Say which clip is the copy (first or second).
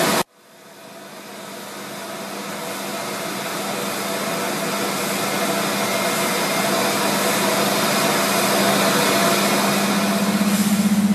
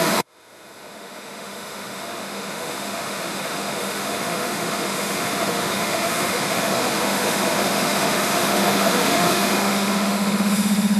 second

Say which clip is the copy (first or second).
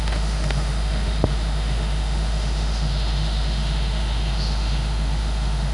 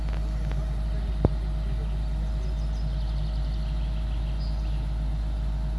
first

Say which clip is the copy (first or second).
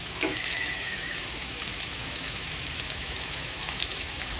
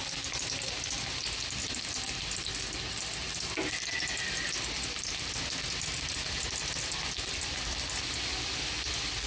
first